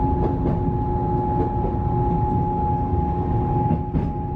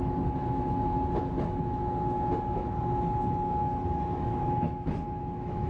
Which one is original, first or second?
first